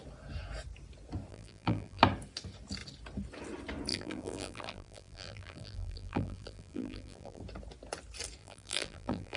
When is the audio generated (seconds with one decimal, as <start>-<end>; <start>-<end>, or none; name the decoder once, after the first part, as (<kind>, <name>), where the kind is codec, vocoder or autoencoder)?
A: 1.3-2.0 (vocoder, BigVGAN v2); 3.9-7.4; 8.4-9.4